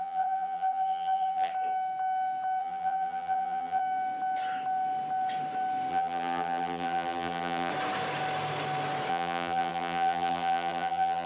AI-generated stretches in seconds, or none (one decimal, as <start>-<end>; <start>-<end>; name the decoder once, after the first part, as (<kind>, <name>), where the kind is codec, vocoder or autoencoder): 0.0-1.5 (vocoder, BigVGAN v2); 2.6-3.8; 5.9-7.7; 9.1-11.3

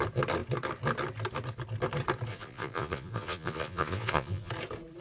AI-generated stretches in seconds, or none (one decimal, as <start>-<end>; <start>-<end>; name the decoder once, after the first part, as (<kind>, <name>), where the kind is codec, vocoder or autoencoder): 2.3-4.5 (vocoder, Vocos)

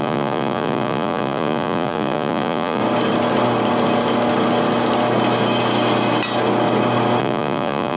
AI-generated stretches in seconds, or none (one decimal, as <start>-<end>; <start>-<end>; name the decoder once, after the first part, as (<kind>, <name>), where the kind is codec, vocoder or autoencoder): 0.0-2.8 (vocoder, Vocos); 7.2-8.0

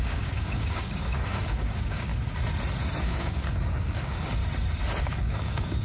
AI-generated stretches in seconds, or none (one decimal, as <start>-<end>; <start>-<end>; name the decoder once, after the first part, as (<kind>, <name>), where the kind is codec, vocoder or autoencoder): 0.0-2.1 (codec, DAC); 3.0-4.4; 5.0-5.8

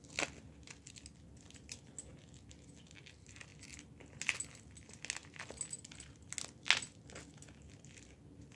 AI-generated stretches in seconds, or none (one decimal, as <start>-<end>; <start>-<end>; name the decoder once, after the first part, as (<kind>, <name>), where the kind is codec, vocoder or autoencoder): none

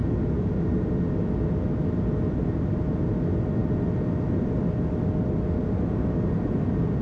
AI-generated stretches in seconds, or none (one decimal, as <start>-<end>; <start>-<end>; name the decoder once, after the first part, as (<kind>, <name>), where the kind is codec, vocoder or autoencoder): none

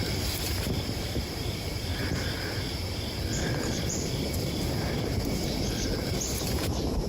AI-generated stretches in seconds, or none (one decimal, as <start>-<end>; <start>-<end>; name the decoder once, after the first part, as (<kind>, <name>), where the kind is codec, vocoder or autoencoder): 0.0-1.9 (vocoder, BigVGAN v2); 3.6-7.1